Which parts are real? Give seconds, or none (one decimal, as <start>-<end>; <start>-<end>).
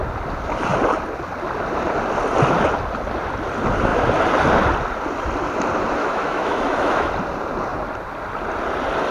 0.0-6.0; 7.1-9.1